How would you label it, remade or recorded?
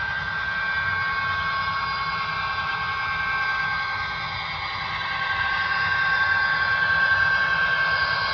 recorded